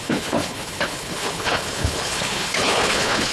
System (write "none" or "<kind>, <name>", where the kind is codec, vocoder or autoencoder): codec, HILCodec